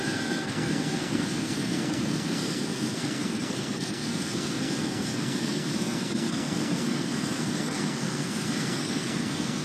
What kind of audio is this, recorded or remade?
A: remade